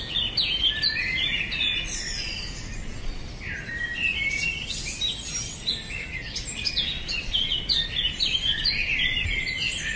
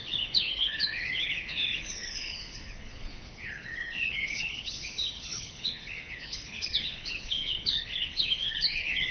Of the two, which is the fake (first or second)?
second